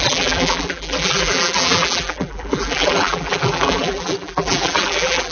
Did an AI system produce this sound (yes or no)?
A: yes